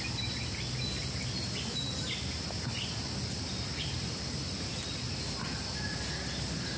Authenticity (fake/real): real